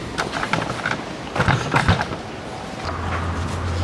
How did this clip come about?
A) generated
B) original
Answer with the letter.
B